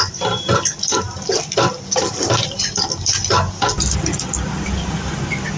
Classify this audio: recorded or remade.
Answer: recorded